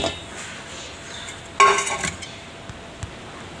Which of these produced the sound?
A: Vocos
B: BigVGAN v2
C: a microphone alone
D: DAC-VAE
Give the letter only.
C